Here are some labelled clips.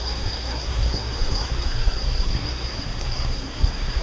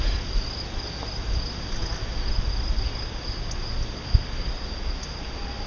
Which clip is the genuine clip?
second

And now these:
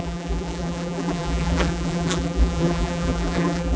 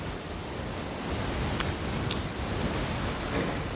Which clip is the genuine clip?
second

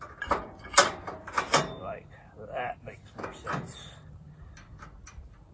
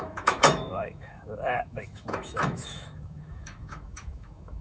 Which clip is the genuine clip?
first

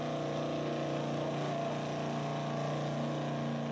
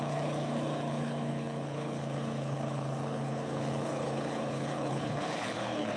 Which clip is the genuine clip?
first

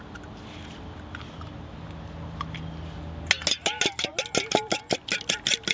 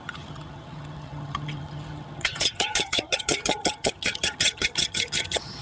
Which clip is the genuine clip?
first